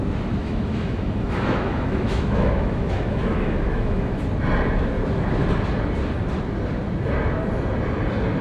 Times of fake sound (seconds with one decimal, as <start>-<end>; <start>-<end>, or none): 0.4-4.2